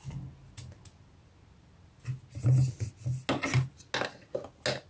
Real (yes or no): yes